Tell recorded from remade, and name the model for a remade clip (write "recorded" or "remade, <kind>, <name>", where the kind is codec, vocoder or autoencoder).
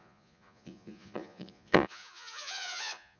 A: remade, vocoder, Vocos